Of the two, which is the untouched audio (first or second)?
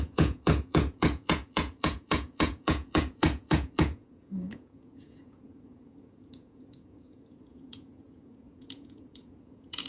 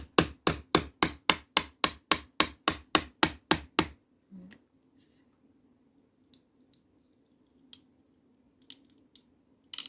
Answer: second